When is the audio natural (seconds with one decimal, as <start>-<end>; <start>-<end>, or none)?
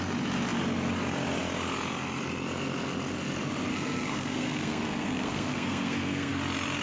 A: 0.0-3.7; 6.3-6.8